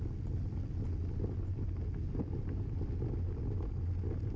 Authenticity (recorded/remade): recorded